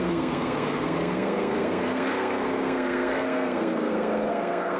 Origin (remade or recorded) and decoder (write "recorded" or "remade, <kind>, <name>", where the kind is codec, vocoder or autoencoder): remade, codec, SNAC